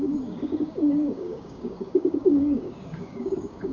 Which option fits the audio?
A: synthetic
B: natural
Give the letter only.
A